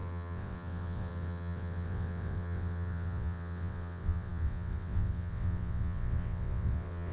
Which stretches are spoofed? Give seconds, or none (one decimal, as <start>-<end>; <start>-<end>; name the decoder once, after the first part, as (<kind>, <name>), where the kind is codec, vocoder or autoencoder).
0.0-7.1 (vocoder, WaveNeXt)